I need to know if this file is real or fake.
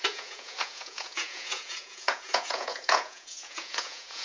fake